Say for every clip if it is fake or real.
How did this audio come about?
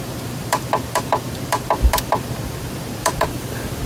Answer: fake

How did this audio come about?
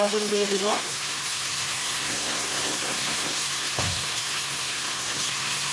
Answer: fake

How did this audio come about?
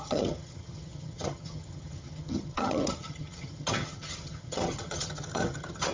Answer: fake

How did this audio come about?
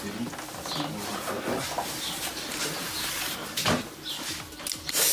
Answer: real